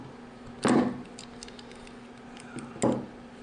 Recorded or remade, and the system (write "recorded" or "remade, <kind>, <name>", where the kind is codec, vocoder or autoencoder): recorded